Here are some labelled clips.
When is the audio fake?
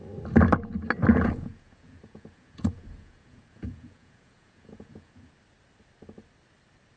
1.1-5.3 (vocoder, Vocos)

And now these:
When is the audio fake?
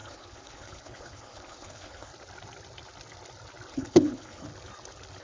0.0-2.1 (codec, HILCodec); 3.7-4.5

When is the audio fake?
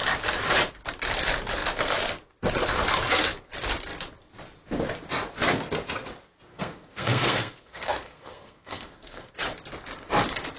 6.5-9.3 (codec, SNAC)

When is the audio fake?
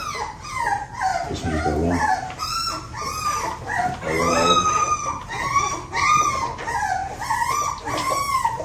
none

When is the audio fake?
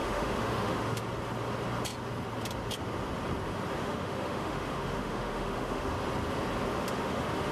0.0-1.0 (autoencoder, DAC-VAE); 3.8-5.9; 6.7-7.5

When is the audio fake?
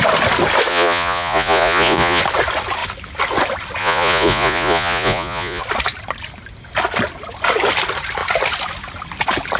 0.7-2.2 (vocoder, Vocos); 3.8-5.6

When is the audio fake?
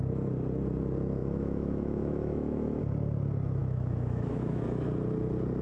1.2-2.8 (autoencoder, DAC-VAE); 3.6-4.6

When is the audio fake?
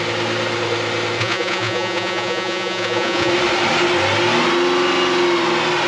1.2-3.3 (vocoder, Vocos)